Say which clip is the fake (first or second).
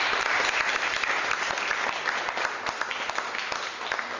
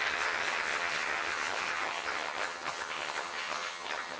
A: second